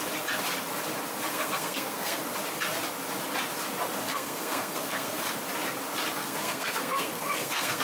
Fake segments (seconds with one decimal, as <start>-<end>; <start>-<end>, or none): 1.3-2.2; 4.1-5.3; 6.2-7.8